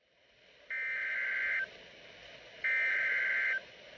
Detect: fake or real real